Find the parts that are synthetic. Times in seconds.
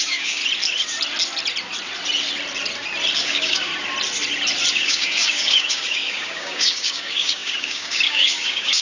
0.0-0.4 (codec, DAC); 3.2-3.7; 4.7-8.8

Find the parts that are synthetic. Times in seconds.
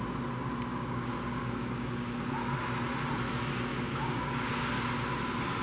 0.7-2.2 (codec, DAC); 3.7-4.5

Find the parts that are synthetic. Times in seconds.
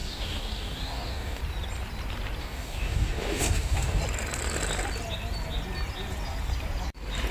0.0-1.4 (codec, DAC); 2.4-4.0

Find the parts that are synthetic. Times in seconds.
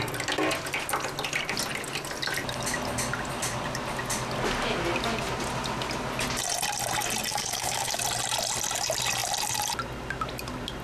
7.3-8.0 (codec, DAC)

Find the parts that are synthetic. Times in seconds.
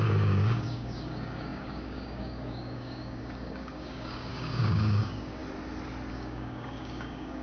0.0-5.4 (codec, DAC); 6.1-7.4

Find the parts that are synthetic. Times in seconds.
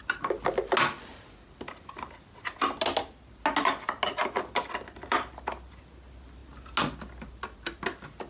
none